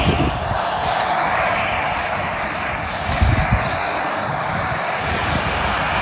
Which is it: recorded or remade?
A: remade